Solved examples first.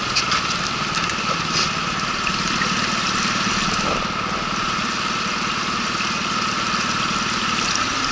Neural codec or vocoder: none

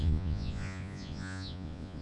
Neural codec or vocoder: vocoder, Vocos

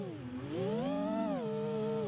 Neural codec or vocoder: none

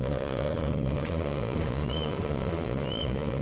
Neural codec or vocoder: vocoder, Vocos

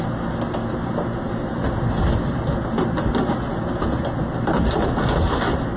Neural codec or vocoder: none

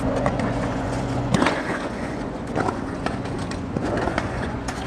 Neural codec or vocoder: vocoder, Vocos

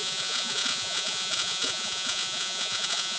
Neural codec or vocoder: vocoder, Vocos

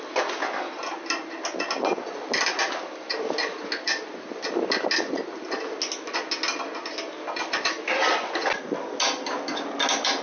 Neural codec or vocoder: none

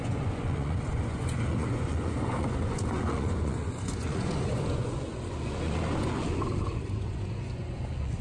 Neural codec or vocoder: vocoder, Vocos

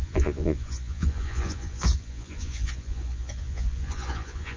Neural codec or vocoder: vocoder, Vocos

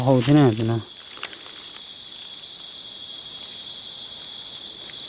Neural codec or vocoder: none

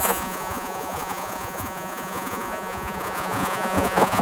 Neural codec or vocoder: vocoder, Vocos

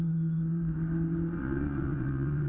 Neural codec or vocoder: vocoder, Vocos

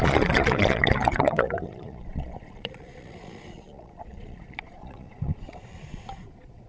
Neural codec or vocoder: vocoder, Vocos